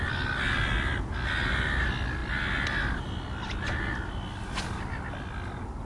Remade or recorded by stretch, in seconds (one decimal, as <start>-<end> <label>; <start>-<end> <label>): 0.0-5.9 recorded